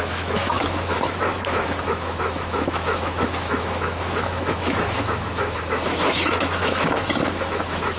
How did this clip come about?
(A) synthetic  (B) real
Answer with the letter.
A